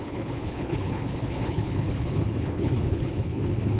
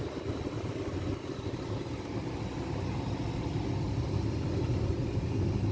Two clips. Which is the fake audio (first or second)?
first